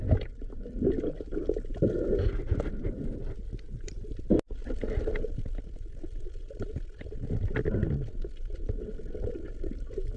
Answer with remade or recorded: recorded